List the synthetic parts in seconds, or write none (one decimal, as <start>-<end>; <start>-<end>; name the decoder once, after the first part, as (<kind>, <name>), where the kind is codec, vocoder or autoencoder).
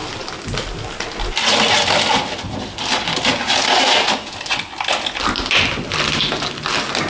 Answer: none